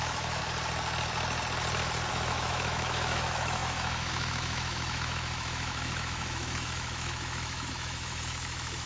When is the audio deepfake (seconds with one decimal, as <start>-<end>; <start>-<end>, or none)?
0.0-0.4; 2.1-8.9